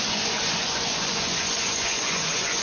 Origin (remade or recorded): remade